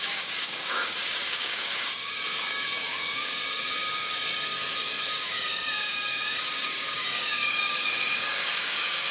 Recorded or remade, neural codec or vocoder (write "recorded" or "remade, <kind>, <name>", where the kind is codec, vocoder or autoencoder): remade, codec, DAC